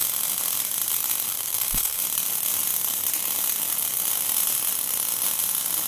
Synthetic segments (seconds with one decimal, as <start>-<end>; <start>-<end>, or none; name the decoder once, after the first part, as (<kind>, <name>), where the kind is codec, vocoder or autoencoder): 1.3-2.0 (codec, SNAC)

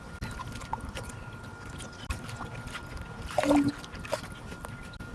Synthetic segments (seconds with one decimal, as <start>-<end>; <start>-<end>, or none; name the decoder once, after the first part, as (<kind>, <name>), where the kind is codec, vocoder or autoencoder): none

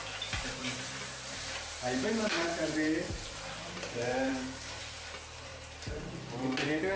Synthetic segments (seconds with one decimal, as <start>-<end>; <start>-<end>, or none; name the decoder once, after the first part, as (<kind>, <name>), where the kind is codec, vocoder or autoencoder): 0.6-4.8 (vocoder, BigVGAN v2); 5.5-6.1

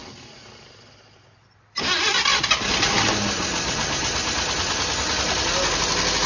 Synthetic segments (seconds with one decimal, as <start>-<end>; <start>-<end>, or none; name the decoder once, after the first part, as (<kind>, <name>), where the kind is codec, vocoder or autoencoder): none

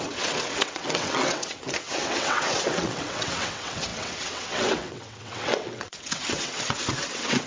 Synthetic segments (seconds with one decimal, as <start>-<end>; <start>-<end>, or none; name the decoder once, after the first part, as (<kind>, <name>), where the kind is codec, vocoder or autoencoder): 0.0-7.5 (vocoder, WaveNeXt)

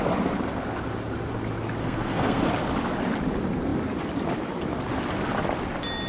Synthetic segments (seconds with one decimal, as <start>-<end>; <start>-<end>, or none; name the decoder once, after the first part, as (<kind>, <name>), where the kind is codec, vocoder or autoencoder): 1.8-2.5 (codec, SNAC)

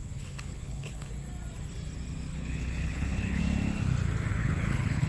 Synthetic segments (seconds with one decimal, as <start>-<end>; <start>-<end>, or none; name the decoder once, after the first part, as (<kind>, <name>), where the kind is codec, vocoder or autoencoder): 0.0-1.1 (codec, HILCodec); 2.3-3.4; 4.4-5.1